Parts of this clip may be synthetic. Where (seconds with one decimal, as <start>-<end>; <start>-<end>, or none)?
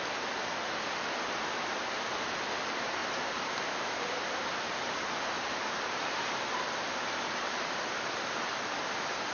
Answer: 3.0-7.8